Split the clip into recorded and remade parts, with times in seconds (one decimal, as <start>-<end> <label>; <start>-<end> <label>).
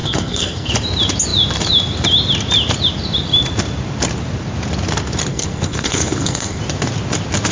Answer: 0.0-0.7 remade; 0.7-5.3 recorded; 5.3-6.6 remade; 6.6-7.5 recorded